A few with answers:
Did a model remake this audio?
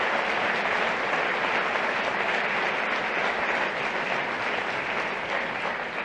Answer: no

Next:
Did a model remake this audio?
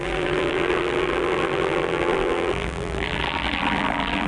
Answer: yes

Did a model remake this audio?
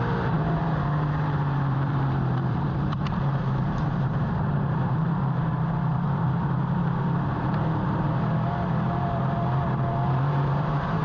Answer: yes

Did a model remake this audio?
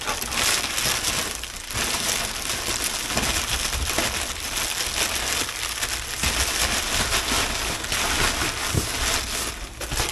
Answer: no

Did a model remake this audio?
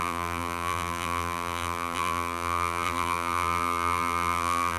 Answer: yes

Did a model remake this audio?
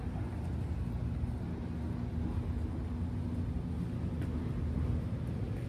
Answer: no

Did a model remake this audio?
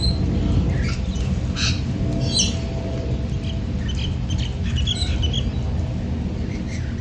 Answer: no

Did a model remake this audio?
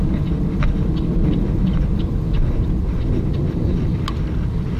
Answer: no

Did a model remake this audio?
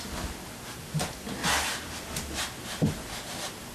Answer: no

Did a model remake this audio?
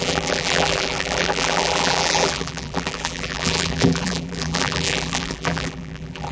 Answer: yes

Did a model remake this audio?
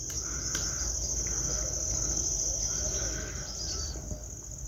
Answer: no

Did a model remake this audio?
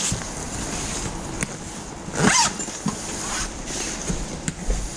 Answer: no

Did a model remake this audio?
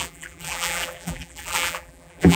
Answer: yes